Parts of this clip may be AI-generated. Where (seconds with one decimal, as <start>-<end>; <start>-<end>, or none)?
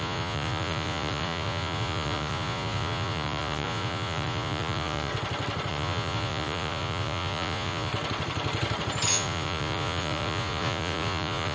0.0-5.1; 5.7-7.9; 9.1-11.5